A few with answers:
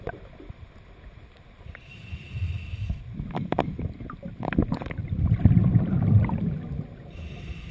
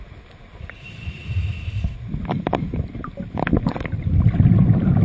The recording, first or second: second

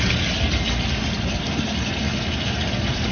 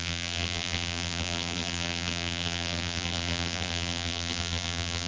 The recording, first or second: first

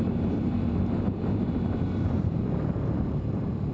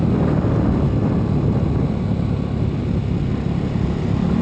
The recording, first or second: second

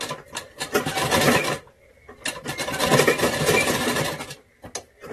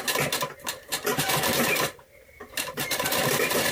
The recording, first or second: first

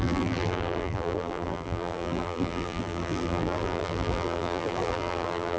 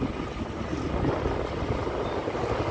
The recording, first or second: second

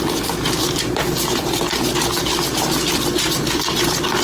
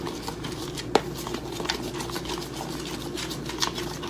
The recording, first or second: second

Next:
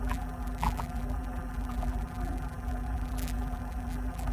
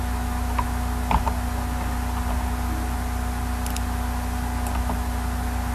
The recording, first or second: second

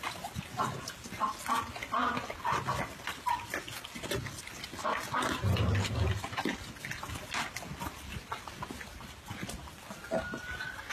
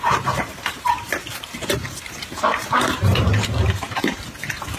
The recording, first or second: first